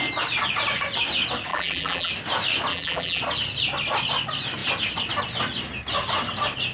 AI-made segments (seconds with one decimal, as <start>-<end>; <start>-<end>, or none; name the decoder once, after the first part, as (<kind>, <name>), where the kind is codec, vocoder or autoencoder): 1.5-2.1 (vocoder, BigVGAN v2); 2.7-3.2